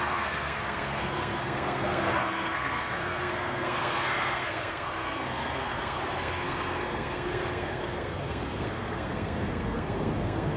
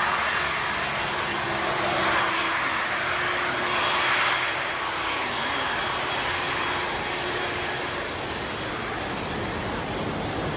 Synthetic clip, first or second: first